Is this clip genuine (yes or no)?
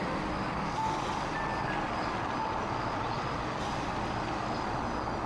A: yes